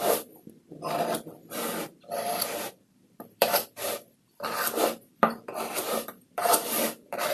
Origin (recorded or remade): remade